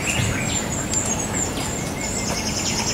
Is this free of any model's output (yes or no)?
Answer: yes